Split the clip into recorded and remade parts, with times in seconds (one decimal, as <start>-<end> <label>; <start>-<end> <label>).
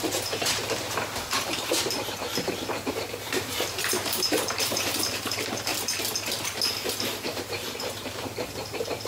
0.0-5.7 remade; 5.7-7.2 recorded; 7.2-9.1 remade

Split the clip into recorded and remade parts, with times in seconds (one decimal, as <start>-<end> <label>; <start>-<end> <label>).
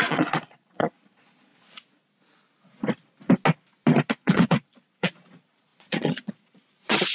0.0-1.5 remade; 1.5-4.1 recorded; 4.1-7.1 remade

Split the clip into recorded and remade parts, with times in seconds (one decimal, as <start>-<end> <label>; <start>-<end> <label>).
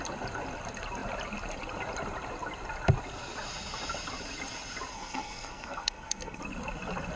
0.0-4.9 recorded; 4.9-6.4 remade; 6.4-7.2 recorded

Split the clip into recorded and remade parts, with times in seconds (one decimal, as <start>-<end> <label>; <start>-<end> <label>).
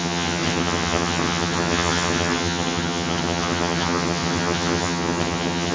0.0-5.7 remade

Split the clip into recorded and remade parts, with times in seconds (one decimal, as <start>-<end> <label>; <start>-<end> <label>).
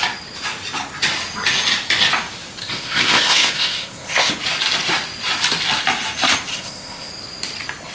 0.0-2.6 recorded; 2.6-4.3 remade; 4.3-6.5 recorded; 6.5-7.1 remade; 7.1-7.9 recorded